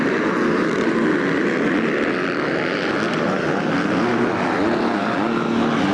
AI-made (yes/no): no